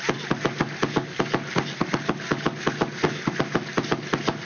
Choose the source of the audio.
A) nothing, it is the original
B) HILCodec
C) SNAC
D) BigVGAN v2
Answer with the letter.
A